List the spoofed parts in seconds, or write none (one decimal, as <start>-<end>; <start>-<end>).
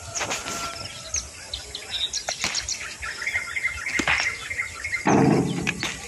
none